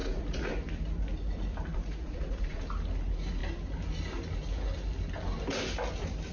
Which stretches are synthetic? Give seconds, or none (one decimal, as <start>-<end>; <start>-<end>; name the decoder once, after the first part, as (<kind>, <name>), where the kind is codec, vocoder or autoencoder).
0.0-0.5 (vocoder, Vocos); 1.7-2.6